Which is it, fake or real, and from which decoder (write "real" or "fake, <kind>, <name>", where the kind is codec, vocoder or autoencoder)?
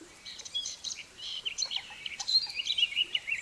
fake, vocoder, BigVGAN v2